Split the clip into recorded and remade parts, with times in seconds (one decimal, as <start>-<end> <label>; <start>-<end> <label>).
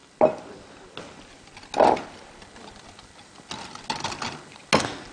0.0-5.1 recorded